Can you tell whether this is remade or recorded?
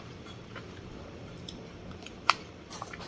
remade